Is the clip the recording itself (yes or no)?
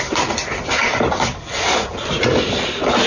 no